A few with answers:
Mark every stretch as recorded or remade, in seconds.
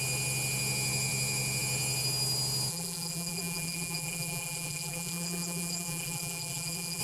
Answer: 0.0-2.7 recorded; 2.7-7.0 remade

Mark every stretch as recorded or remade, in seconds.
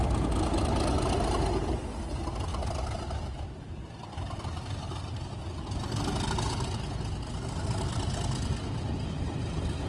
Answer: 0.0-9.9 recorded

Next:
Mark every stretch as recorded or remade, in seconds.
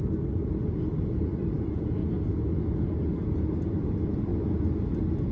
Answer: 0.0-2.0 remade; 2.0-3.7 recorded; 3.7-4.3 remade; 4.3-5.3 recorded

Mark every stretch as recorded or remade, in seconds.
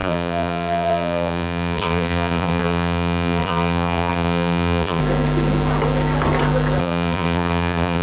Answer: 0.0-5.0 remade; 5.0-6.8 recorded; 6.8-8.0 remade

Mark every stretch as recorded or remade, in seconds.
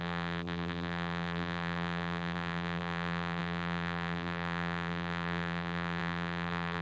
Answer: 0.0-6.8 remade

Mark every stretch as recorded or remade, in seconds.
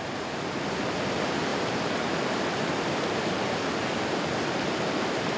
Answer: 0.0-5.4 recorded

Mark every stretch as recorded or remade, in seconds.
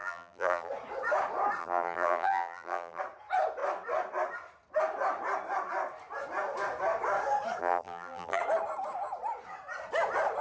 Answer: 0.0-0.7 remade; 0.7-1.6 recorded; 1.6-3.0 remade; 3.0-7.6 recorded; 7.6-8.4 remade; 8.4-10.4 recorded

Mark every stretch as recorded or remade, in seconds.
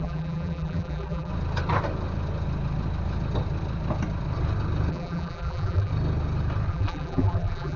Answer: 0.0-1.3 remade; 1.3-4.9 recorded; 4.9-5.9 remade; 5.9-6.7 recorded; 6.7-7.8 remade